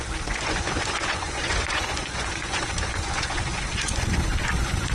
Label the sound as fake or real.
fake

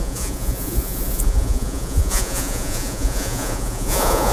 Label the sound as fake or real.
fake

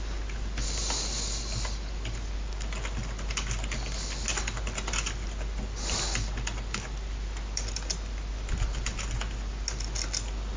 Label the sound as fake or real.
real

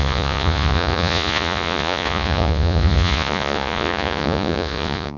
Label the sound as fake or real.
fake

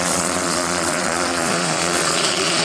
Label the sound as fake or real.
fake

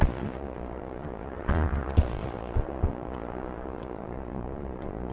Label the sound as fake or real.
fake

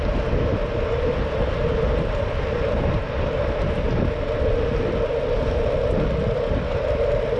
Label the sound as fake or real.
real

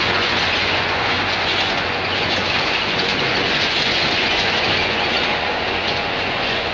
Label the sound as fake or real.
fake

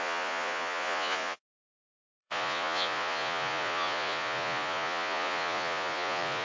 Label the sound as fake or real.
fake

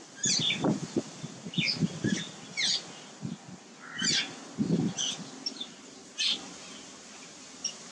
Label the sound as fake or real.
real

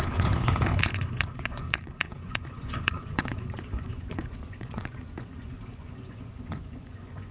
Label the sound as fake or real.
fake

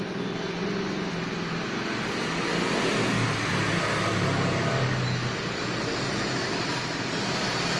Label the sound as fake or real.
real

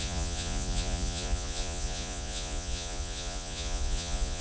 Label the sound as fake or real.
fake